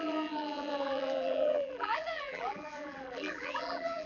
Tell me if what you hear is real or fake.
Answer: fake